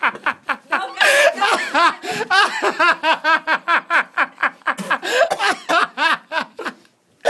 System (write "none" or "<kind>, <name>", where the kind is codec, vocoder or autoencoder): none